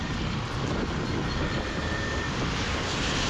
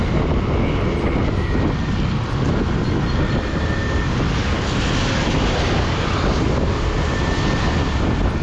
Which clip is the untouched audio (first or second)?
second